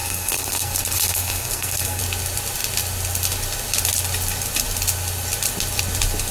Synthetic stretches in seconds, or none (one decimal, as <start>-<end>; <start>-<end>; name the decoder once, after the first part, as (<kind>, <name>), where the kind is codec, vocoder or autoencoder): 0.0-2.0 (codec, SNAC)